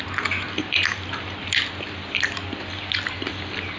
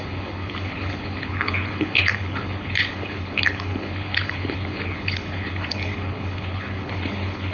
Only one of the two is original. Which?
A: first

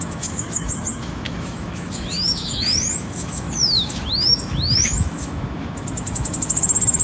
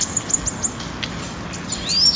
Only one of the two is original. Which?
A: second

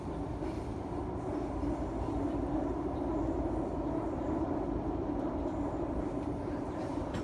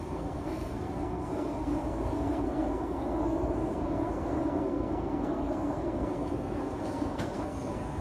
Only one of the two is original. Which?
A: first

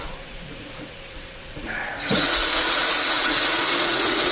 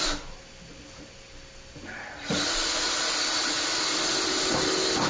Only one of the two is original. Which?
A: second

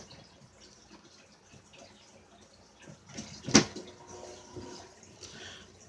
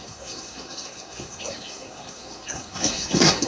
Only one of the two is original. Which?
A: first